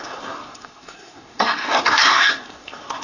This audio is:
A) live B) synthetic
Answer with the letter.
B